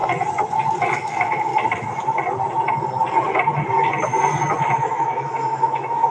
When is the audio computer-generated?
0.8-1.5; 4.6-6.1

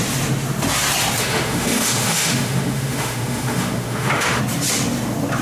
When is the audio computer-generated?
1.2-4.4

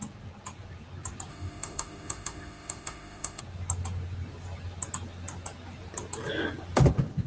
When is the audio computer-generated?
1.3-3.4

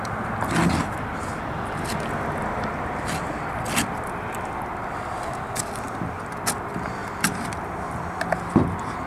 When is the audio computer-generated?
none